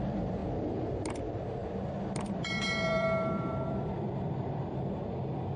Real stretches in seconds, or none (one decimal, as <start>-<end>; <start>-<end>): 0.0-1.6; 5.0-5.6